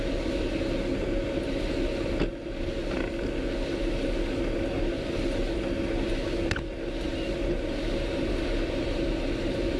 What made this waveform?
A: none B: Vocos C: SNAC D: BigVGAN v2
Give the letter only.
A